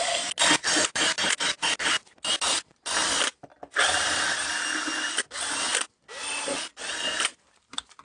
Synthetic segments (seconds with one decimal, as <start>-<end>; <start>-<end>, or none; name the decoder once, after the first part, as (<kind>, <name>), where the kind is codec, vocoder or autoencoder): none